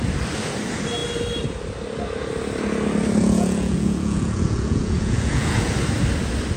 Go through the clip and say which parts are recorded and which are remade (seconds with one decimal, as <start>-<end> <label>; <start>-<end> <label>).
0.0-3.2 recorded; 3.2-5.7 remade; 5.7-6.6 recorded